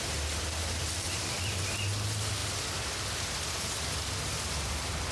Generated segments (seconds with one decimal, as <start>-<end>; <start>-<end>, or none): 0.0-5.1